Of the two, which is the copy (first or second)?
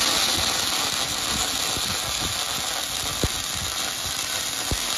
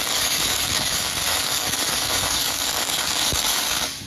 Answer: second